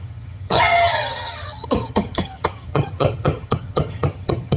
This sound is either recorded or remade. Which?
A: remade